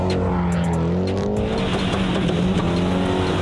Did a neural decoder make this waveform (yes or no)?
no